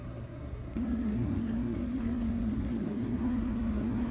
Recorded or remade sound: remade